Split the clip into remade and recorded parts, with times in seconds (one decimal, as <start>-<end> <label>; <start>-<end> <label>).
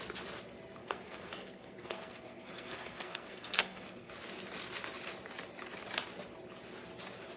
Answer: 0.0-0.8 recorded; 0.8-4.1 remade; 4.1-7.4 recorded